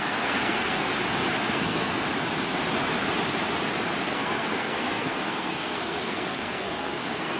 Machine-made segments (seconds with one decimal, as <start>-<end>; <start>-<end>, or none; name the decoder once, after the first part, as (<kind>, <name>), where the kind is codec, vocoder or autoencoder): 0.0-0.9 (codec, SNAC); 1.5-2.0; 4.0-7.4